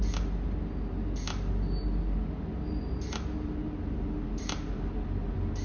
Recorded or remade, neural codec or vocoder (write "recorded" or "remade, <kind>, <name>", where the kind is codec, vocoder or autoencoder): recorded